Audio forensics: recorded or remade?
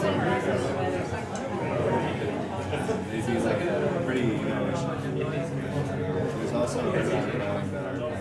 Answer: recorded